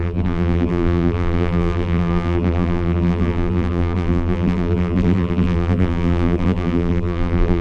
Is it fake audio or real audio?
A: fake